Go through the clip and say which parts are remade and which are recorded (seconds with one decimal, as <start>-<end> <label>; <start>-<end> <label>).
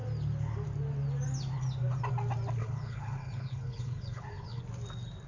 0.0-2.6 recorded; 2.6-4.6 remade; 4.6-5.3 recorded